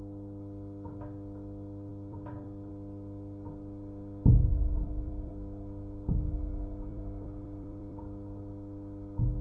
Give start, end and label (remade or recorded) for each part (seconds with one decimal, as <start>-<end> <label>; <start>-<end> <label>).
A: 0.0-1.9 recorded; 1.9-2.7 remade; 2.7-4.5 recorded; 4.5-5.3 remade; 5.3-6.9 recorded; 6.9-8.0 remade; 8.0-9.4 recorded